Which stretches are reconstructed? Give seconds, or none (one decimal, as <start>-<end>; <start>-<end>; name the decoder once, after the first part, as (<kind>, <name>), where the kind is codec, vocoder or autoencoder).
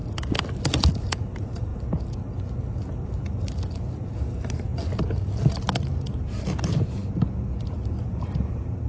0.9-1.7 (vocoder, BigVGAN v2); 2.9-4.7; 6.2-7.0; 7.6-8.9